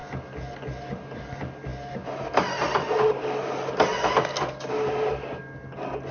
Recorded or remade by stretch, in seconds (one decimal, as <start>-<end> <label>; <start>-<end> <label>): 0.0-6.1 recorded